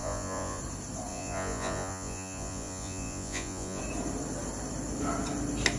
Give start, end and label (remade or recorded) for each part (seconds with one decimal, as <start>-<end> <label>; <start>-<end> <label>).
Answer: 0.0-0.6 remade; 0.6-1.1 recorded; 1.1-3.8 remade; 3.8-5.8 recorded